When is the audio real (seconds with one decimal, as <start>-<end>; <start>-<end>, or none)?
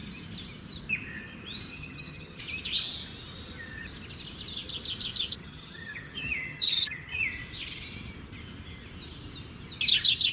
0.0-1.7; 2.4-5.4; 7.2-10.3